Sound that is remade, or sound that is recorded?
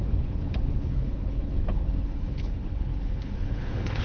remade